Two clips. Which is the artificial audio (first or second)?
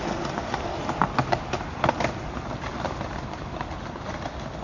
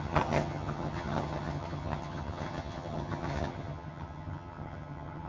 second